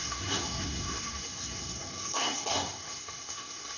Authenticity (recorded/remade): remade